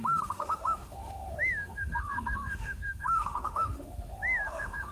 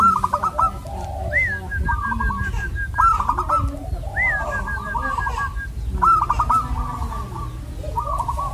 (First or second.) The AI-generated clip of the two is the first